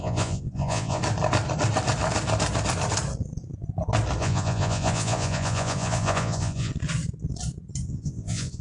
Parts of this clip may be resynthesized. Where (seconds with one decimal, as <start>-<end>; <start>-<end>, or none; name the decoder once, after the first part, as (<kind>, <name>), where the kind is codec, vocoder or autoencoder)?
0.0-1.0 (vocoder, Vocos); 4.2-6.7; 7.8-8.6